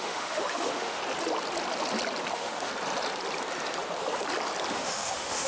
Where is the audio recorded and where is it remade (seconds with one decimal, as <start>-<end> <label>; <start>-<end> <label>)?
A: 0.0-1.0 remade; 1.0-2.3 recorded; 2.3-2.7 remade; 2.7-4.7 recorded; 4.7-5.5 remade